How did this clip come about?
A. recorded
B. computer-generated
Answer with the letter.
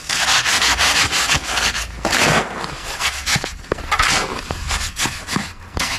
B